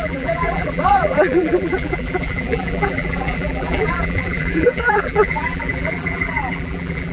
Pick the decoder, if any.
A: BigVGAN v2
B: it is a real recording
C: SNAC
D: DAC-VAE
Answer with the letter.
A